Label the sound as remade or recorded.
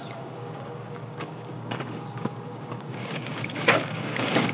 remade